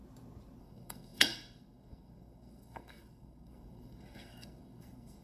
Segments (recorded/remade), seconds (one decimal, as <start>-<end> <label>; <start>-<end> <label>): 0.0-0.6 recorded; 0.6-5.2 remade